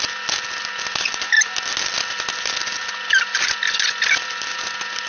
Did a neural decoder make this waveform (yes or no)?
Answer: no